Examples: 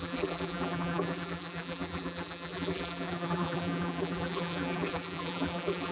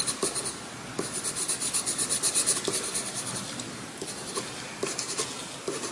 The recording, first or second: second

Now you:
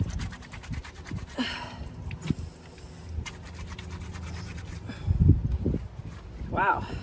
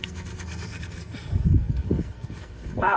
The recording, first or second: first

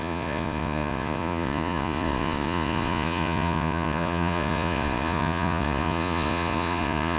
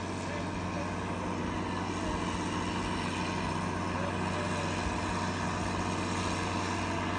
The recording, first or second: second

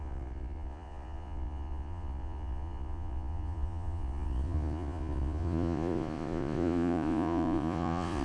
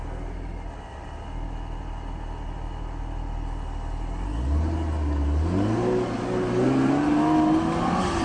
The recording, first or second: second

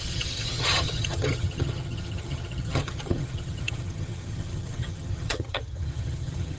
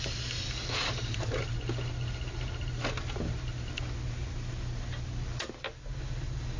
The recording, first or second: second